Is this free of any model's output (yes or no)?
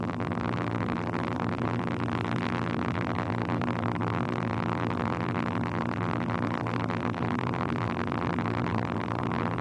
no